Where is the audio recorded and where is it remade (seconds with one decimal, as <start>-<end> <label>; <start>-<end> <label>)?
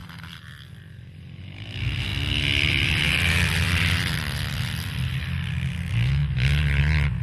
0.0-7.2 recorded